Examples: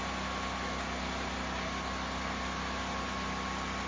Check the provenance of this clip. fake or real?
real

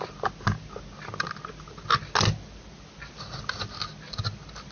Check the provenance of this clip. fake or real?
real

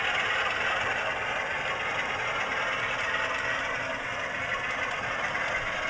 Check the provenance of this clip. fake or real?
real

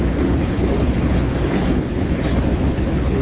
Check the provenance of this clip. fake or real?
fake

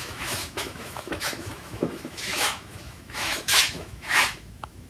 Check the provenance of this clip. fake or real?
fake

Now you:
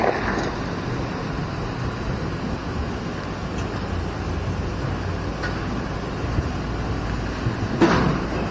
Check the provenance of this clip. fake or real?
real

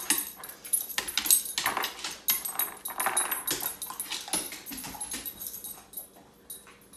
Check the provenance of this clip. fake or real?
real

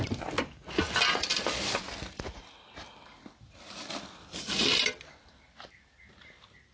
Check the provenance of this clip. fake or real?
real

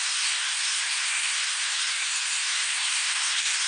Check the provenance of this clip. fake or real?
fake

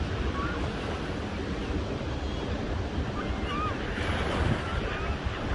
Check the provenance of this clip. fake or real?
real